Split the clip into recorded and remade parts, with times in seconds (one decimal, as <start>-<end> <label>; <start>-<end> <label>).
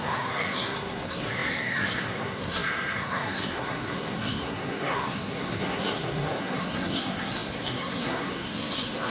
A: 0.0-9.1 remade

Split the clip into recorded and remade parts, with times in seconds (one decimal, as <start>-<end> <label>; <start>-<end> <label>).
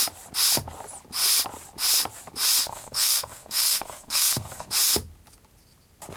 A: 0.0-2.6 recorded; 2.6-4.7 remade; 4.7-6.2 recorded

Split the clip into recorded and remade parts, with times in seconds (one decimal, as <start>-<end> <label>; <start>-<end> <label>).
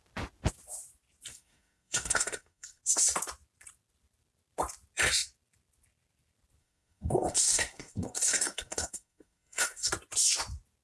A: 0.0-1.3 recorded; 1.3-2.8 remade; 2.8-6.6 recorded; 6.6-9.9 remade; 9.9-10.8 recorded